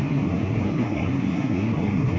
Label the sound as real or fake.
fake